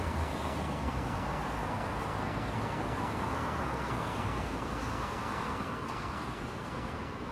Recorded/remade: remade